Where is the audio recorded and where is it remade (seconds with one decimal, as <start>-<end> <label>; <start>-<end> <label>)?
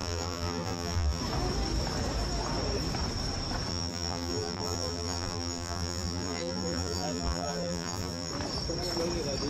0.0-1.2 remade; 1.2-3.7 recorded; 3.7-8.3 remade; 8.3-9.5 recorded